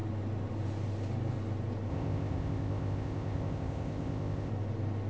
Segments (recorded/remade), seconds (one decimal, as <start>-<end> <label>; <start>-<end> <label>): 0.0-1.9 recorded; 1.9-4.5 remade; 4.5-5.1 recorded